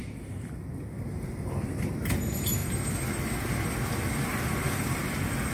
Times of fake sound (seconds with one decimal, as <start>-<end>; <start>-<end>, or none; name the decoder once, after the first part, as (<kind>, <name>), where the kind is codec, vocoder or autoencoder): 0.0-2.1 (vocoder, BigVGAN v2); 4.3-5.0